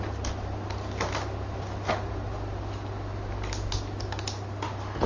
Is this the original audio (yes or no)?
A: yes